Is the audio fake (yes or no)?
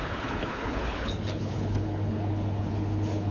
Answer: yes